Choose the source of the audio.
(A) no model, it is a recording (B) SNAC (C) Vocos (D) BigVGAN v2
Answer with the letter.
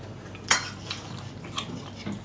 A